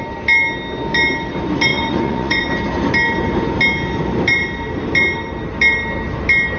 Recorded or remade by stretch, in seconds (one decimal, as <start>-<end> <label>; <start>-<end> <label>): 0.0-1.7 recorded; 1.7-2.4 remade; 2.4-6.6 recorded